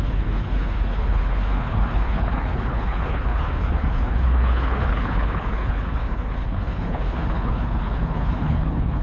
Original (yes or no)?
no